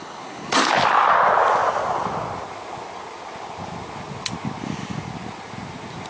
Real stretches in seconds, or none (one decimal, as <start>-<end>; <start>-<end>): 0.6-6.1